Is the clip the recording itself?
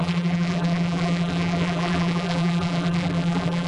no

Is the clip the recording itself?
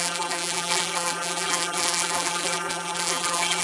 no